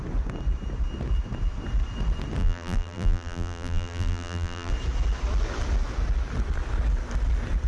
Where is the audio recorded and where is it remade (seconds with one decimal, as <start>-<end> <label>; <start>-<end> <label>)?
0.0-2.4 recorded; 2.4-4.7 remade; 4.7-7.7 recorded